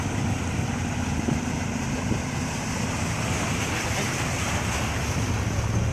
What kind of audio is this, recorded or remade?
recorded